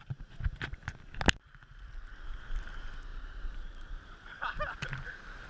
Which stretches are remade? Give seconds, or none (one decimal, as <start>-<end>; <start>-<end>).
3.1-3.9